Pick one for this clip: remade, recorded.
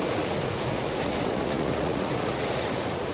remade